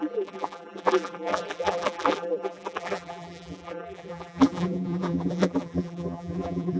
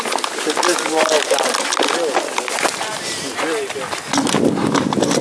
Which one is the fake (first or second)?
first